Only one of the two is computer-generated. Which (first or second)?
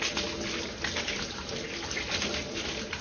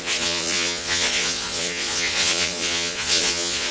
second